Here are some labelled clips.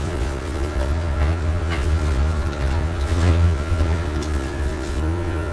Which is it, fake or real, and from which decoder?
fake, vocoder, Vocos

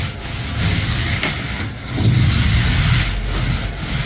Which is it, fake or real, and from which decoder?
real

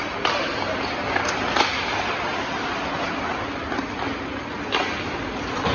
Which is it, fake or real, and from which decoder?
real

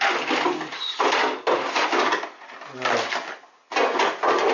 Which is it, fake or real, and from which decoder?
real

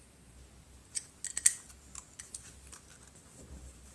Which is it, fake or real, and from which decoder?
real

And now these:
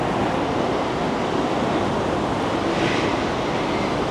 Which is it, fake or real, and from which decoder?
real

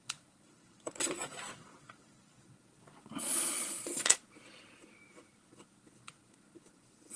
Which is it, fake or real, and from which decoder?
fake, vocoder, Vocos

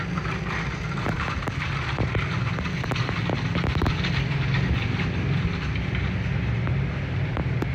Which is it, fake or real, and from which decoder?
real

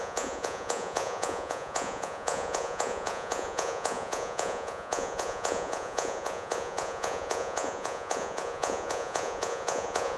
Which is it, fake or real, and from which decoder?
fake, vocoder, Vocos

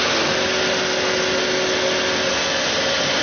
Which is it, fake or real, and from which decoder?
real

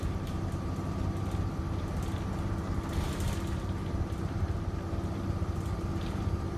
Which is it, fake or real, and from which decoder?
real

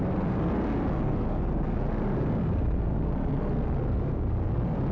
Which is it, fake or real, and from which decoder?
real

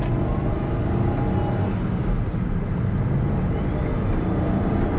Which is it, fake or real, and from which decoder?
real